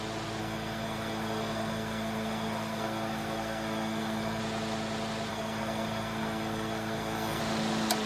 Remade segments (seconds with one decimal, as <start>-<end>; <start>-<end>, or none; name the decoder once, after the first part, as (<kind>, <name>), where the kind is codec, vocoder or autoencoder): 0.4-4.4 (codec, SNAC); 5.3-7.4